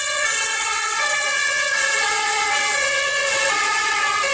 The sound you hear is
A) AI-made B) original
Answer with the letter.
A